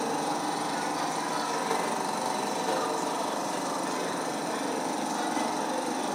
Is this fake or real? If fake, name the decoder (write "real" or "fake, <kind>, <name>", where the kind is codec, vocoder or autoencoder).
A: real